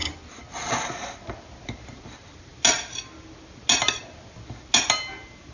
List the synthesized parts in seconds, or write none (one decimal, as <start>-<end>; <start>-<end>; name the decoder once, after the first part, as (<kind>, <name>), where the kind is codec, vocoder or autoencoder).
none